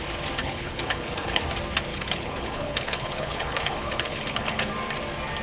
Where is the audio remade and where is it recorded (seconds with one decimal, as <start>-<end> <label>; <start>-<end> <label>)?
0.0-0.4 recorded; 0.4-1.4 remade; 1.4-1.9 recorded; 1.9-4.7 remade; 4.7-5.4 recorded